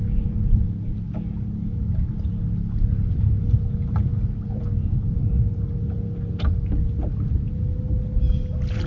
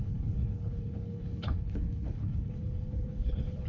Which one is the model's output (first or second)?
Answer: second